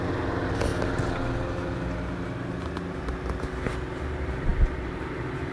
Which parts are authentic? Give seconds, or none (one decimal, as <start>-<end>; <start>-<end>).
0.7-3.6

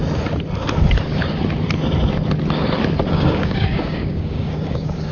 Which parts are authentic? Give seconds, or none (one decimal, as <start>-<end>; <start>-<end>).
0.0-3.1

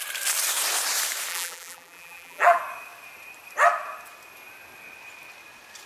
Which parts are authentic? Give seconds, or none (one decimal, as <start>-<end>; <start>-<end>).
0.0-1.3; 2.6-5.9

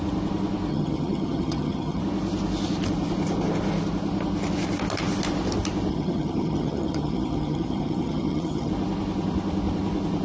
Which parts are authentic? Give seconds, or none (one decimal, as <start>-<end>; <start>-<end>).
0.0-0.7; 2.0-5.9; 8.7-10.2

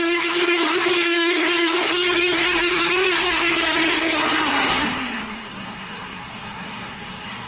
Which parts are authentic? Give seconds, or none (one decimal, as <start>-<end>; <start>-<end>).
none